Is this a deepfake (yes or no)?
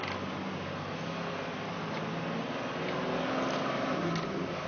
no